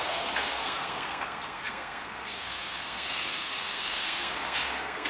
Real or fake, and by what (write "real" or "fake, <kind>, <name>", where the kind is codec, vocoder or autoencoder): fake, codec, SNAC